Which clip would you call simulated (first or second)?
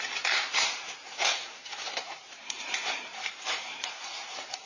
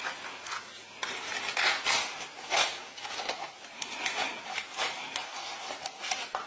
first